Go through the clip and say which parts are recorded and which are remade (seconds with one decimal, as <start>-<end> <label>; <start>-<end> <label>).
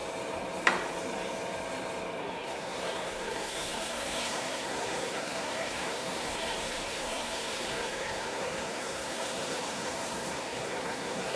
0.0-2.2 recorded; 2.2-11.4 remade